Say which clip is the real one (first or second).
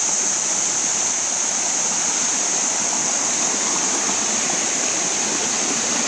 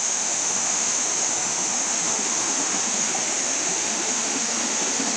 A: first